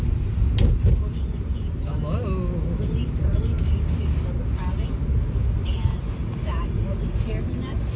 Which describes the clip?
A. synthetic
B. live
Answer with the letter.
B